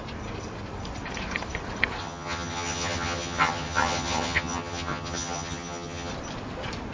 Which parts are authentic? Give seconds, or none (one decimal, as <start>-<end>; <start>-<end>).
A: 0.0-2.0; 6.1-6.9